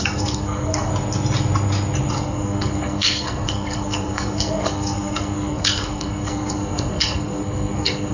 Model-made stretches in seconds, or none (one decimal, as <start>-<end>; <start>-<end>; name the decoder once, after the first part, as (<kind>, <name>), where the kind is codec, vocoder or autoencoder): 0.0-0.9 (codec, SNAC); 2.1-8.1